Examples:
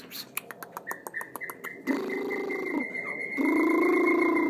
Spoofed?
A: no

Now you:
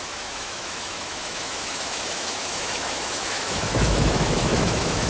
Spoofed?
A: yes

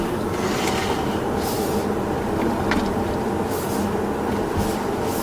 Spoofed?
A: no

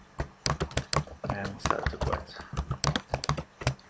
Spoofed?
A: no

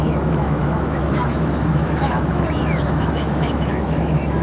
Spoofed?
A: yes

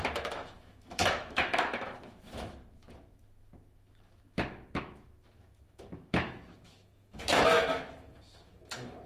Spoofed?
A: yes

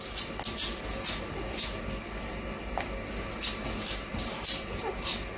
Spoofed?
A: no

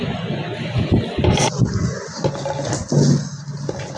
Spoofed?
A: no